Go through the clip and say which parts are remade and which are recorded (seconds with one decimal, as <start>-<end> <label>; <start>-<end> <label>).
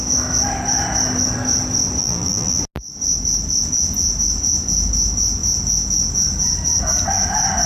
0.0-2.0 recorded; 2.0-2.6 remade; 2.6-7.7 recorded